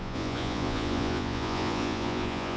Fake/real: fake